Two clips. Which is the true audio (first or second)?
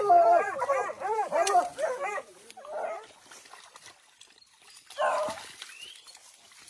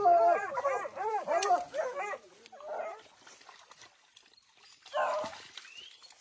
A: second